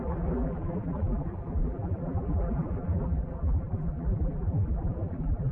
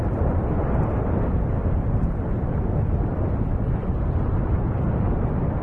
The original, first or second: second